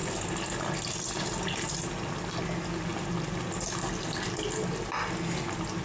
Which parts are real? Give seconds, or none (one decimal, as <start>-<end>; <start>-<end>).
0.0-5.8